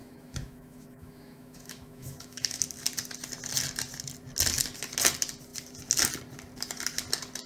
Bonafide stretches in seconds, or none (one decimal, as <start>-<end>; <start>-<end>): 2.6-7.5